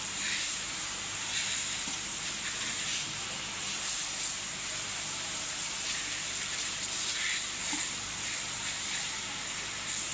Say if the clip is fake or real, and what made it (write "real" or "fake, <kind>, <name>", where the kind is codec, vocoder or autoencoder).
fake, vocoder, BigVGAN v2